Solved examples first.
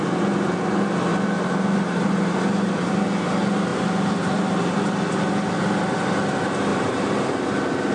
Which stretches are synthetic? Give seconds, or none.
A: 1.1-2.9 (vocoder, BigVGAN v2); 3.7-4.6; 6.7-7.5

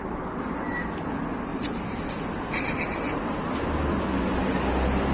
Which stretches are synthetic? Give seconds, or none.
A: 1.5-2.3 (vocoder, BigVGAN v2)

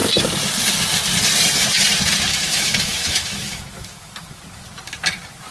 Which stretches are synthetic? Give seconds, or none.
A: 2.3-4.4 (autoencoder, DAC-VAE)